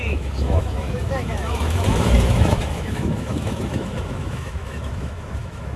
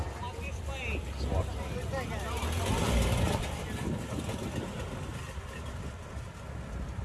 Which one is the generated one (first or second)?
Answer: first